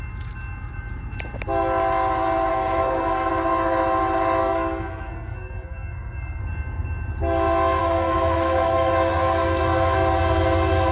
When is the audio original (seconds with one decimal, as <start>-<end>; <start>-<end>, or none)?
0.0-2.5; 3.3-4.4; 6.4-7.8; 9.6-10.9